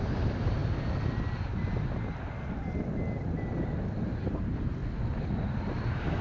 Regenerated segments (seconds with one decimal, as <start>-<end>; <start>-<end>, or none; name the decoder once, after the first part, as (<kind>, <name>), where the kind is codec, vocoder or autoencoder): 0.0-0.6 (vocoder, BigVGAN v2); 4.3-4.8; 5.5-6.2